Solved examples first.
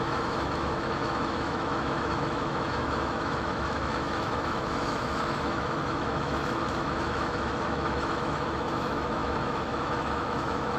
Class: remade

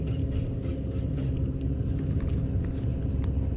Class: recorded